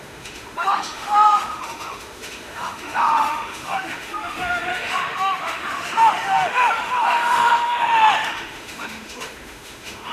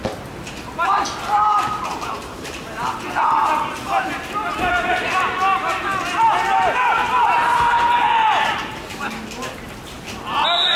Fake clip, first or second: first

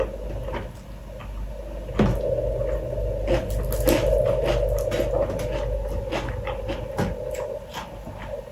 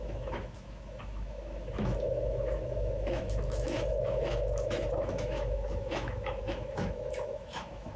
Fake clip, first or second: second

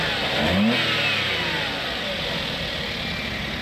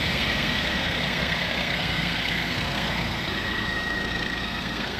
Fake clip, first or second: second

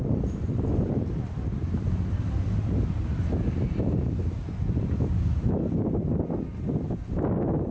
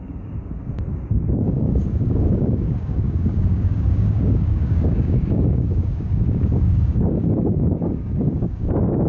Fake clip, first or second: second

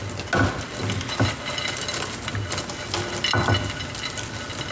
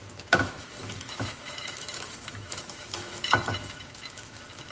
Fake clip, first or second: second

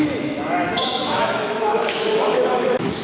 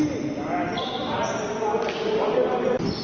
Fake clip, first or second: first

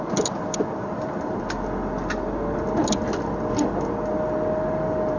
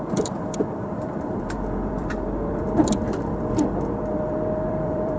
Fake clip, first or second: second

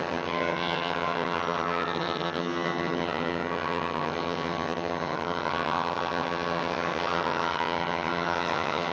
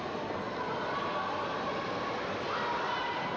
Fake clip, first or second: first